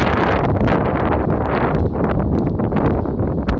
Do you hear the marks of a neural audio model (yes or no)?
no